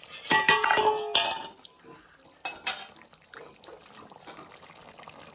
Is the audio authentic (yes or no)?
yes